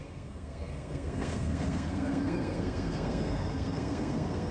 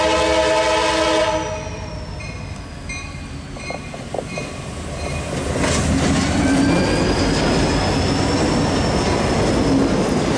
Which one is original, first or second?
second